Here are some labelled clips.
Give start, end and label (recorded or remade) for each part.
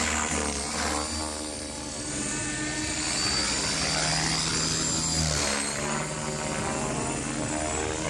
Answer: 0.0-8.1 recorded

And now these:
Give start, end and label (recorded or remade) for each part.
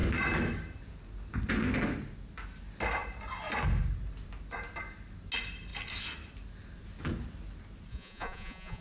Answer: 0.0-7.9 recorded; 7.9-8.8 remade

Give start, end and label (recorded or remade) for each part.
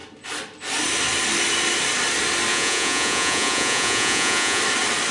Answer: 0.0-2.5 recorded; 2.5-4.6 remade; 4.6-5.1 recorded